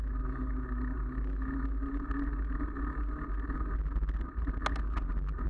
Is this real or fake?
real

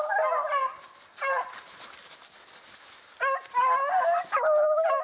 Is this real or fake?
real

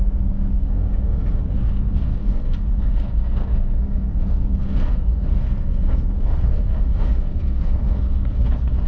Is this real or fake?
fake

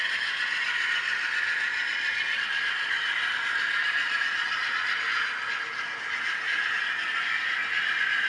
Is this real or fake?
real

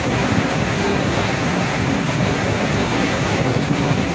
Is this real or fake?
fake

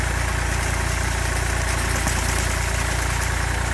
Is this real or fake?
real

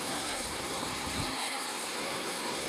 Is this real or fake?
fake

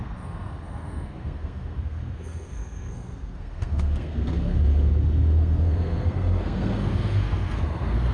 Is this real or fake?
fake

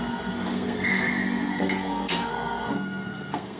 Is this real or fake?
fake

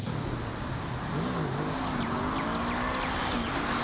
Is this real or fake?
real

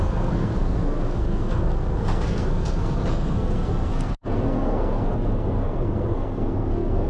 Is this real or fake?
fake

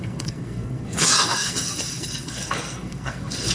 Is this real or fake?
fake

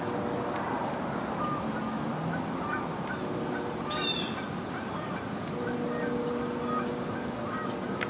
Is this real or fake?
real